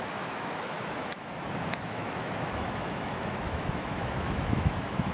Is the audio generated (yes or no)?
yes